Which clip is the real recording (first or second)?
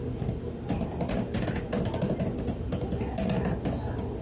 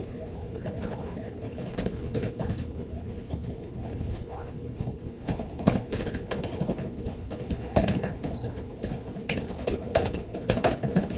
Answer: first